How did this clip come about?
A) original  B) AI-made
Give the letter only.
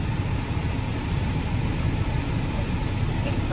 A